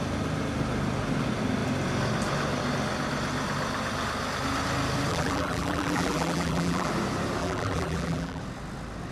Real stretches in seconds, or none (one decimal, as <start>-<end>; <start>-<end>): 0.0-5.1; 6.9-7.4; 8.4-9.1